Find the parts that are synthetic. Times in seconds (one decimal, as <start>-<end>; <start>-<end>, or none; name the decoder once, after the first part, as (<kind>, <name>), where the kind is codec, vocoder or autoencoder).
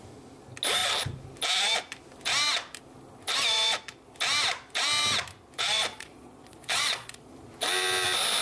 5.9-7.3 (vocoder, Vocos)